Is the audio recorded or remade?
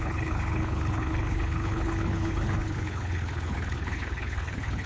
remade